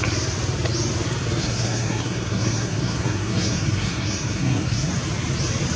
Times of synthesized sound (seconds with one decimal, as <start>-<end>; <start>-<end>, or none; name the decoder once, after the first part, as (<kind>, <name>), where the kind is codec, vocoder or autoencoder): 1.4-4.9 (codec, SNAC)